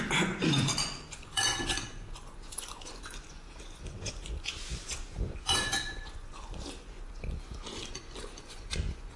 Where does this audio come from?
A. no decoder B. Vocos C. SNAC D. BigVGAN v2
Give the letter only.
B